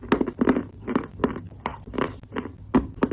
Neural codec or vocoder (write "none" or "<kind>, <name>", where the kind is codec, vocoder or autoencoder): none